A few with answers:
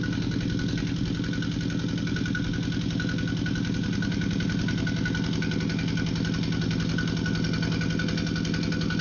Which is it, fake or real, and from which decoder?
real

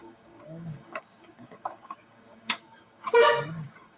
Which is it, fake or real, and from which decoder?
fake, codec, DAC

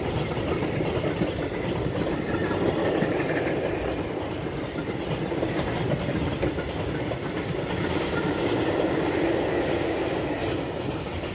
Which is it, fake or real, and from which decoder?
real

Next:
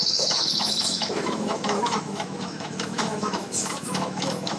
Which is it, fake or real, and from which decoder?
fake, autoencoder, DAC-VAE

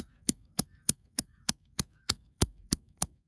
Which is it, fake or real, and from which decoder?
fake, codec, SNAC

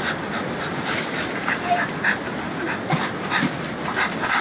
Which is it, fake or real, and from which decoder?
real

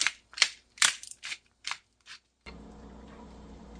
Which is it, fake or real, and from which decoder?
fake, vocoder, BigVGAN v2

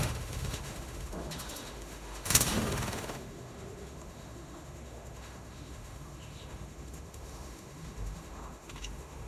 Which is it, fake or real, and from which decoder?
fake, autoencoder, DAC-VAE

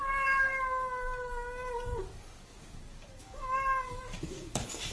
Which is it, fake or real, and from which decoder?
fake, codec, DAC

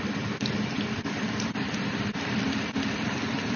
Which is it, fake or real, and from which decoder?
fake, vocoder, BigVGAN v2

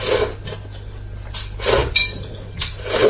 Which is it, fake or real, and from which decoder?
real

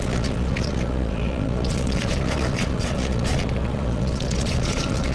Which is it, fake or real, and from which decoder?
fake, vocoder, Vocos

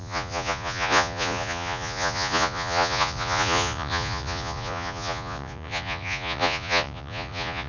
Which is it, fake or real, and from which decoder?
fake, vocoder, Vocos